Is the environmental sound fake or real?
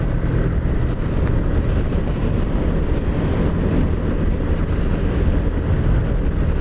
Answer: real